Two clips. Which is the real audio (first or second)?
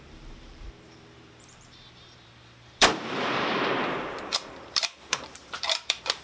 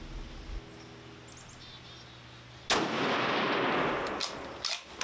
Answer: second